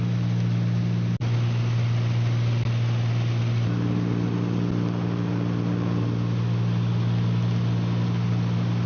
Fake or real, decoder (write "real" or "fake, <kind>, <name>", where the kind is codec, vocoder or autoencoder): real